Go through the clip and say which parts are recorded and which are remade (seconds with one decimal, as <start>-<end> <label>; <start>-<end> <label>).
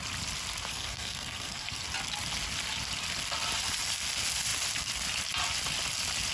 0.0-0.7 recorded; 0.7-1.8 remade; 1.8-6.3 recorded